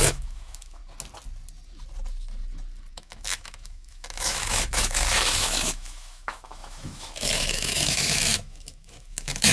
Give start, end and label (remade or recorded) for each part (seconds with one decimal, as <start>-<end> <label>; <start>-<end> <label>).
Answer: 0.0-0.8 remade; 0.8-2.9 recorded; 2.9-9.5 remade